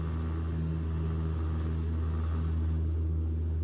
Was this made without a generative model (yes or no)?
yes